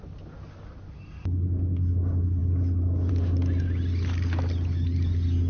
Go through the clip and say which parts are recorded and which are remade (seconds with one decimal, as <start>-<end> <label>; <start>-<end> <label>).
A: 0.0-5.5 recorded